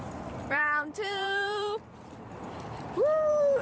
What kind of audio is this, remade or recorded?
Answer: remade